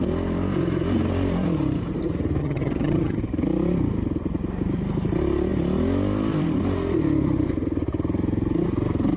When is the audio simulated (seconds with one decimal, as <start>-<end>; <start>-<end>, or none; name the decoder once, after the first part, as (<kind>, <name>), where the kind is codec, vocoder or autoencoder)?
2.4-3.2 (vocoder, HiFi-GAN)